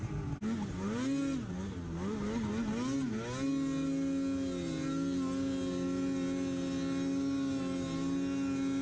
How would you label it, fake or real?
real